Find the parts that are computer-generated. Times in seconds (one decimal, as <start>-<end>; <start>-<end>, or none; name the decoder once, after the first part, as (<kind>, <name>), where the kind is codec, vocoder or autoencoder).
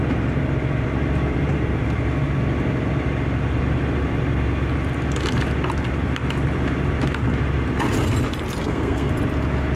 8.6-9.1 (codec, SNAC)